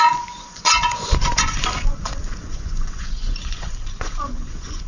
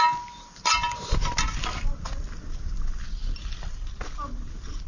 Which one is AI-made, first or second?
first